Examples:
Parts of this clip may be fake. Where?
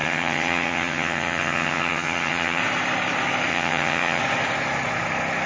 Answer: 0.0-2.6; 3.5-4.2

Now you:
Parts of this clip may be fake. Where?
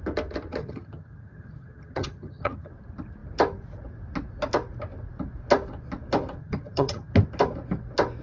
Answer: 0.6-2.7; 6.4-7.1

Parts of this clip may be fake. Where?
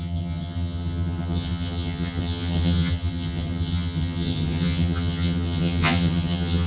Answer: 0.0-6.7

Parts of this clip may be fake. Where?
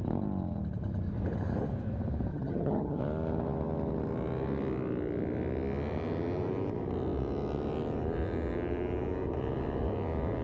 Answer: 2.3-3.0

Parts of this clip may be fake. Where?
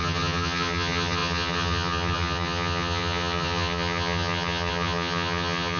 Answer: 0.0-5.8